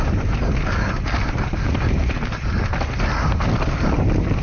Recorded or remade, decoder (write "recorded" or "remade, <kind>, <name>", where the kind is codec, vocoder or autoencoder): recorded